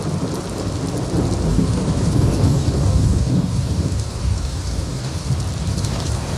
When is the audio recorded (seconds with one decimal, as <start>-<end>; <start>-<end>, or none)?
0.0-1.5; 5.3-5.7